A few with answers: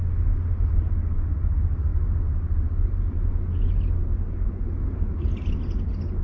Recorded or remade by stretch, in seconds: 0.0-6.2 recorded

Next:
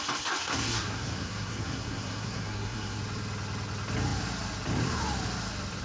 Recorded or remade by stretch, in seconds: 0.0-0.4 recorded; 0.4-3.0 remade; 3.0-5.8 recorded

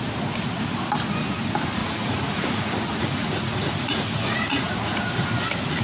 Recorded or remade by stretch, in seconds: 0.0-1.8 recorded; 1.8-5.3 remade; 5.3-5.8 recorded

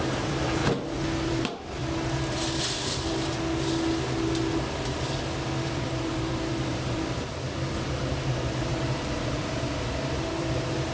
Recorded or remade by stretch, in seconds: 0.0-0.6 remade; 0.6-1.3 recorded; 1.3-1.8 remade; 1.8-5.7 recorded; 5.7-10.9 remade

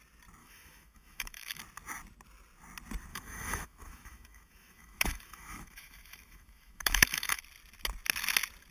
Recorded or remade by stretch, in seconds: 0.0-0.4 recorded; 0.4-1.6 remade; 1.6-3.1 recorded; 3.1-7.4 remade; 7.4-8.7 recorded